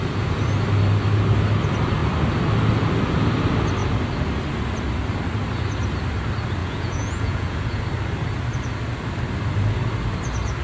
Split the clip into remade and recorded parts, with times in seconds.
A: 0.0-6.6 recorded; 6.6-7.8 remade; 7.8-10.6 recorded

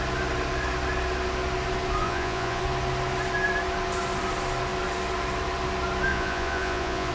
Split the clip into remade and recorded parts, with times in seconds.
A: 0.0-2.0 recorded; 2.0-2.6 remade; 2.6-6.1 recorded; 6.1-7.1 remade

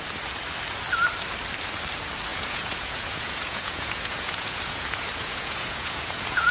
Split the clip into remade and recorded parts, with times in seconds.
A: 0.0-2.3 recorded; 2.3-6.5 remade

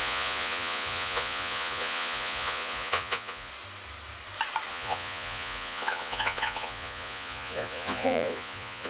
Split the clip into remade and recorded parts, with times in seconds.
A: 0.0-3.5 remade; 3.5-4.7 recorded; 4.7-8.9 remade

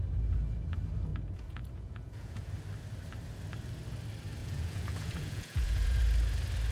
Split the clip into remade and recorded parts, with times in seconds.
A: 0.0-1.1 recorded; 1.1-2.5 remade; 2.5-4.4 recorded; 4.4-6.0 remade; 6.0-6.7 recorded

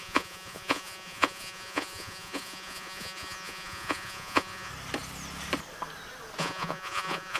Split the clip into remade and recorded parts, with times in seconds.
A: 0.0-4.7 remade; 4.7-6.4 recorded; 6.4-7.4 remade

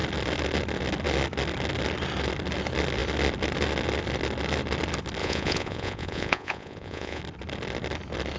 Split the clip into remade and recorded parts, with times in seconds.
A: 0.0-5.2 recorded; 5.2-7.2 remade; 7.2-8.4 recorded

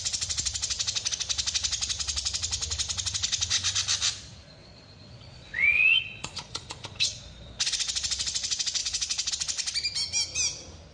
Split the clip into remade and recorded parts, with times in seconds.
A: 0.0-4.6 recorded; 4.6-7.2 remade; 7.2-8.8 recorded; 8.8-9.3 remade; 9.3-10.9 recorded